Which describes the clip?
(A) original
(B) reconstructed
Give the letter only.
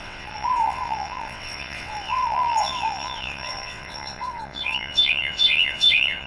B